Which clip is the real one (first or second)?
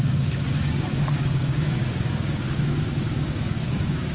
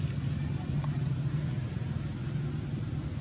second